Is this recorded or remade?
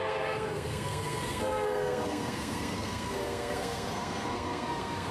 remade